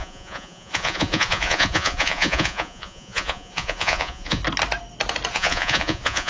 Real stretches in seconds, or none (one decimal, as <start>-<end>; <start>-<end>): 4.4-5.3